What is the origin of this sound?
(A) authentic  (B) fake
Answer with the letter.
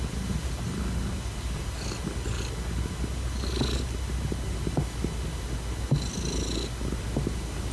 A